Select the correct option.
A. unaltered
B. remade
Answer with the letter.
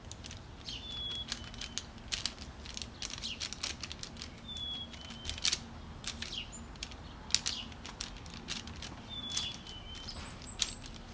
A